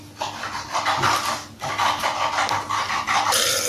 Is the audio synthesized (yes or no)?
no